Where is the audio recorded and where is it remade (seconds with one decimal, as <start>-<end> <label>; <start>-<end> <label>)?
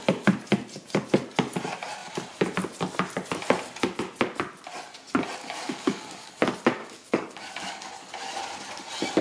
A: 0.0-5.4 recorded; 5.4-6.3 remade; 6.3-6.8 recorded; 6.8-7.9 remade; 7.9-9.2 recorded